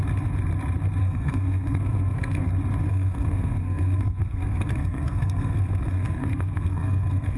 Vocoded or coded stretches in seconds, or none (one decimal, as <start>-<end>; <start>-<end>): 1.0-2.5; 2.9-7.4